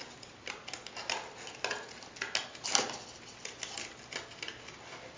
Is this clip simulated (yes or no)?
no